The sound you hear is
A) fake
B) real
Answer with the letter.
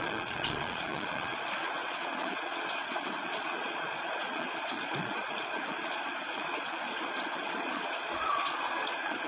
A